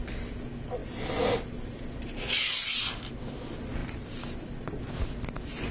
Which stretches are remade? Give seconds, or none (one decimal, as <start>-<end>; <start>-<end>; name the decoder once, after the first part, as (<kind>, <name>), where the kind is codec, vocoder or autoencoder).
none